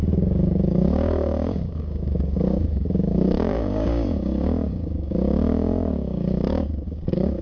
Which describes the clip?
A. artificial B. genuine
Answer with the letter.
A